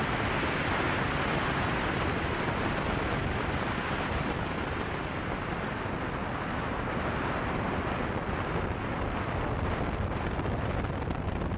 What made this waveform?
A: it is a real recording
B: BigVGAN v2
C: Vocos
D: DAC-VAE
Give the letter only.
A